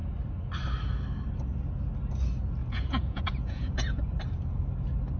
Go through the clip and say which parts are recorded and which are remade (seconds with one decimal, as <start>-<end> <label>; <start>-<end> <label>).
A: 0.0-2.6 recorded; 2.6-4.0 remade; 4.0-5.2 recorded